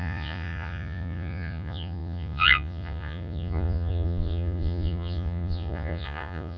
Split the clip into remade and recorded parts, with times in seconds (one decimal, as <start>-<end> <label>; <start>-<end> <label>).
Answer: 0.0-6.6 remade